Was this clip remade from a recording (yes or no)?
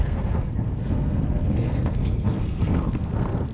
yes